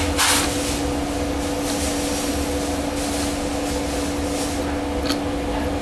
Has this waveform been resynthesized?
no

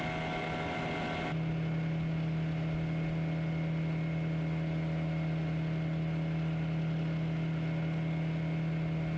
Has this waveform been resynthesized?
no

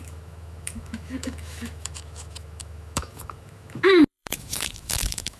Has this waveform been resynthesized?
yes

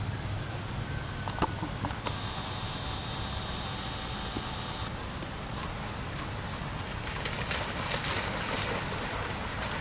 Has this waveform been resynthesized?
no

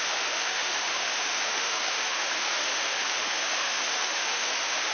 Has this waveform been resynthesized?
yes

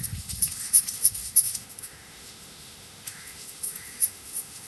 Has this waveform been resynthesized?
yes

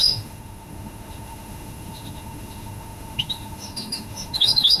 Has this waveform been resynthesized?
yes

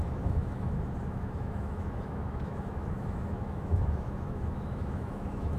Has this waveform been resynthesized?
yes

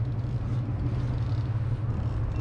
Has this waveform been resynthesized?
no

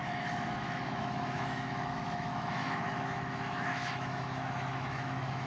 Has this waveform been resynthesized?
yes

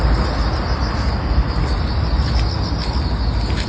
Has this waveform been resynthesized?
no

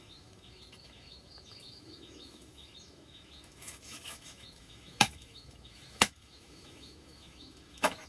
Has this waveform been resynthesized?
yes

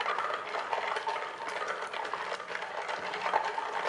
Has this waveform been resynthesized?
no